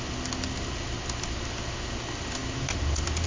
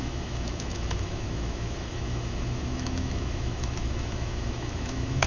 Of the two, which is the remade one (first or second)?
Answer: second